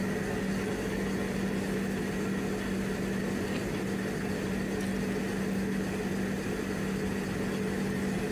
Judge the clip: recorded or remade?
recorded